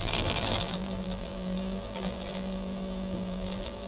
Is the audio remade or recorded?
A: remade